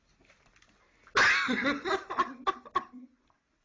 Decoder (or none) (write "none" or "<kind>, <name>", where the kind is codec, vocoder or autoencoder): none